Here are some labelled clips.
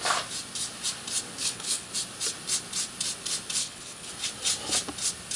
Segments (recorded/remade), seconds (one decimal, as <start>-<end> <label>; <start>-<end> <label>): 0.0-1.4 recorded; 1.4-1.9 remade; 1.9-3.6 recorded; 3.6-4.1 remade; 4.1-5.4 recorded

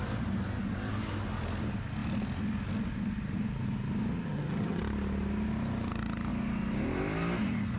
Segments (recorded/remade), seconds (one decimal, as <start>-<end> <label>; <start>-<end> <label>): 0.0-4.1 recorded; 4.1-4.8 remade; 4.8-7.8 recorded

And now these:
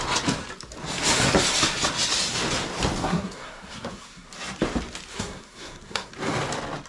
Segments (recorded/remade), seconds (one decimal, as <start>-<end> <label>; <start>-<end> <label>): 0.0-3.0 recorded; 3.0-4.3 remade; 4.3-5.1 recorded; 5.1-6.1 remade; 6.1-6.9 recorded